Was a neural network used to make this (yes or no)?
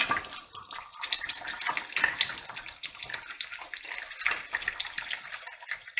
no